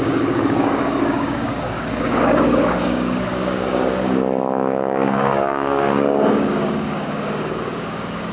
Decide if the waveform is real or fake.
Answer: fake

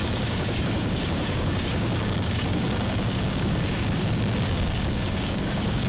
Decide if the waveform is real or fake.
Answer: fake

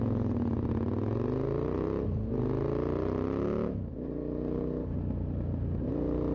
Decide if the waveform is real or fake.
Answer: real